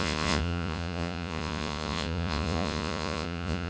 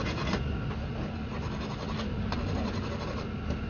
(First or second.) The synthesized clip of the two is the first